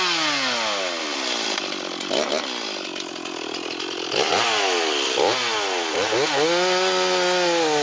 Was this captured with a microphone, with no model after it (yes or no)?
yes